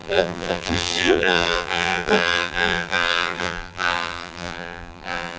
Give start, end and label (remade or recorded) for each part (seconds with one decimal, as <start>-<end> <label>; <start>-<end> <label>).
0.0-5.4 remade